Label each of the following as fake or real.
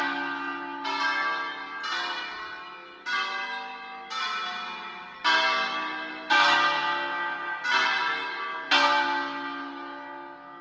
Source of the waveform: real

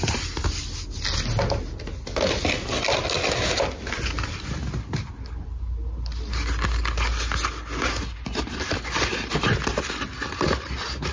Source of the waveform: real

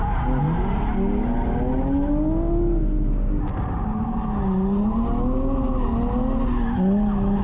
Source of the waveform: real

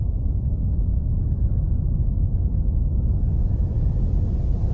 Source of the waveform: real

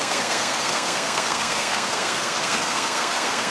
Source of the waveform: fake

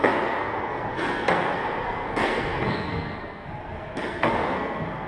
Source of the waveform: fake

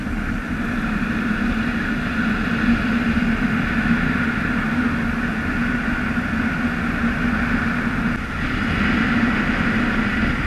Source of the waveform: real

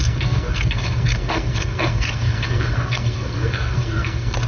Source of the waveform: fake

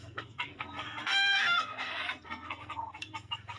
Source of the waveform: fake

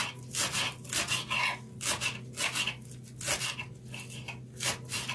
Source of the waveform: real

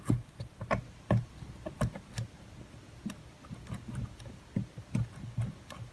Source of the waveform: real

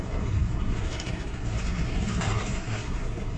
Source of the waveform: fake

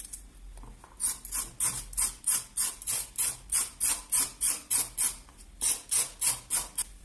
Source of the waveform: real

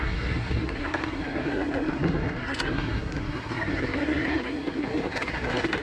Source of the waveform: fake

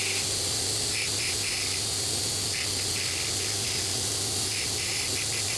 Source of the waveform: real